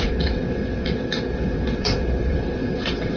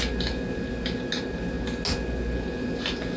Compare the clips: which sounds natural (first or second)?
second